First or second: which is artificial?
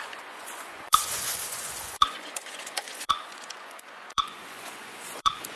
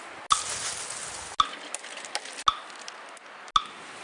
first